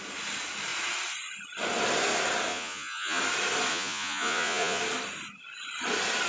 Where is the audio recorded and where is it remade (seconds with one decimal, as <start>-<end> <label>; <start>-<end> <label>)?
0.0-2.5 recorded; 2.5-3.2 remade; 3.2-3.7 recorded; 3.7-4.8 remade; 4.8-6.3 recorded